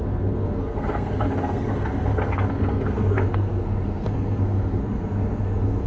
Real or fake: fake